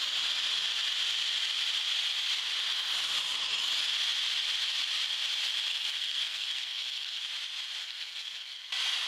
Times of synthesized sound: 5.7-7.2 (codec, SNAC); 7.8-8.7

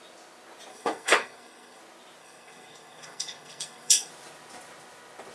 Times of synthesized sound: 0.7-1.8 (codec, SNAC); 2.2-4.1

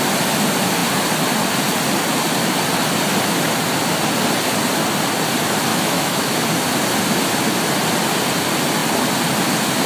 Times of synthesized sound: 5.7-6.4 (autoencoder, DAC-VAE)

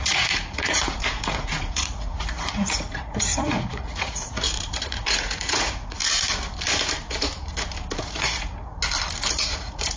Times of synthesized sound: 0.0-6.0 (vocoder, Vocos); 8.0-8.8; 9.3-10.0

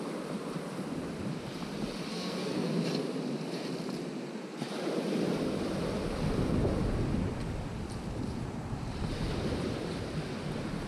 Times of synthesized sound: 2.1-2.7 (codec, SNAC)

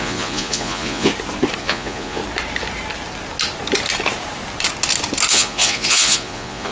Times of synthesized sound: 0.0-1.1 (vocoder, Vocos); 1.6-2.2; 5.3-6.7

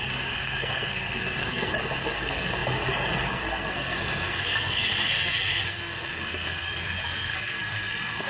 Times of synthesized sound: 0.0-8.3 (codec, SNAC)

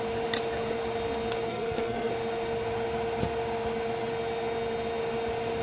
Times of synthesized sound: 1.5-2.1 (codec, SNAC)